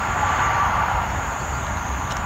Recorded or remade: remade